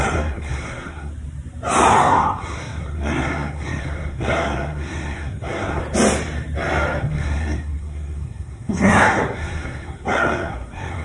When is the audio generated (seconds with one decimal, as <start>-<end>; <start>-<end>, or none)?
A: 0.0-1.1; 1.9-5.8; 7.0-11.0